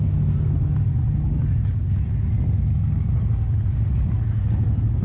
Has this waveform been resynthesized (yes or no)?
no